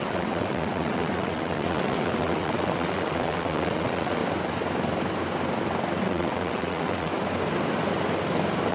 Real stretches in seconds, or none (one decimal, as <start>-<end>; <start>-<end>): 4.2-6.0; 7.1-8.7